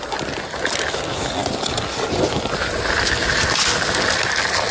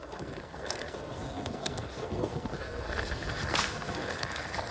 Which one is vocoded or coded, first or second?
second